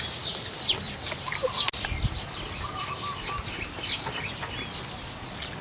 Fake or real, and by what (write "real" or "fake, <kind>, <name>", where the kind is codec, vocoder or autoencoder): real